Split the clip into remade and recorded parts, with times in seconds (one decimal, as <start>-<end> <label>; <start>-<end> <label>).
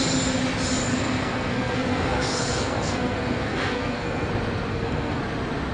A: 0.0-0.9 recorded; 0.9-4.3 remade; 4.3-4.7 recorded; 4.7-5.2 remade; 5.2-5.7 recorded